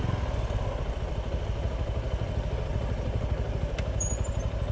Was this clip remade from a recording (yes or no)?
no